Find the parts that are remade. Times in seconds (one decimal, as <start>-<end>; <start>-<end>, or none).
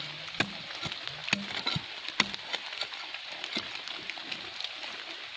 none